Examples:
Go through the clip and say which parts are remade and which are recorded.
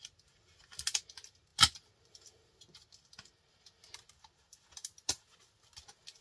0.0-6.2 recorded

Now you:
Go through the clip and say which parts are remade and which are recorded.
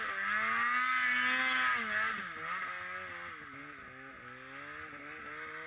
0.0-5.7 recorded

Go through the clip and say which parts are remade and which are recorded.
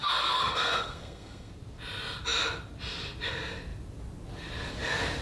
0.0-1.5 remade; 1.5-5.2 recorded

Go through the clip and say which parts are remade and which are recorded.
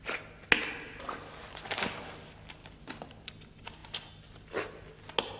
0.0-2.6 recorded; 2.6-3.3 remade; 3.3-5.4 recorded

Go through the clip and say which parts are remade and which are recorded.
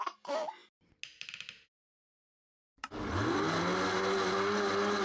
0.0-5.0 recorded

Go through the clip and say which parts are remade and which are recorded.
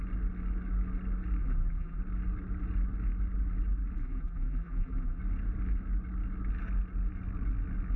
0.0-1.4 recorded; 1.4-2.0 remade; 2.0-4.0 recorded; 4.0-5.2 remade; 5.2-8.0 recorded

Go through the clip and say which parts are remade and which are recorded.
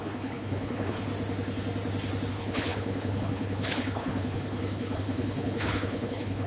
0.0-1.1 remade; 1.1-2.3 recorded; 2.3-6.5 remade